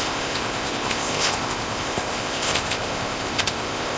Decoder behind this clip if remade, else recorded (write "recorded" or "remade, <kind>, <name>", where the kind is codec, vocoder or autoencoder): remade, codec, ZipCodec